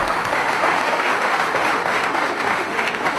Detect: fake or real fake